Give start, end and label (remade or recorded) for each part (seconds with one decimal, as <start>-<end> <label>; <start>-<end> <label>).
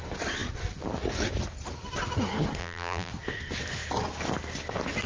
0.0-2.6 recorded; 2.6-3.1 remade; 3.1-5.1 recorded